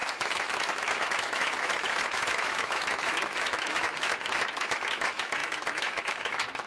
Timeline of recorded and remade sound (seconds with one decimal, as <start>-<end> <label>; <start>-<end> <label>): 0.0-6.7 remade